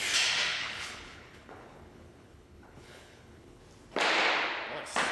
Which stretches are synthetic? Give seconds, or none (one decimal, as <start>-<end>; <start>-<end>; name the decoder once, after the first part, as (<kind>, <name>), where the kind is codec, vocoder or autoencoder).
0.5-3.6 (codec, HILCodec)